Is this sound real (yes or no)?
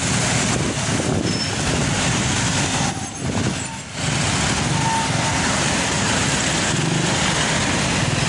yes